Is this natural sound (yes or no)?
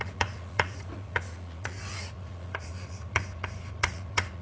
no